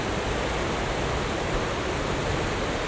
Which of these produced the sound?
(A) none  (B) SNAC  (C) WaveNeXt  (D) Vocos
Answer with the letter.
A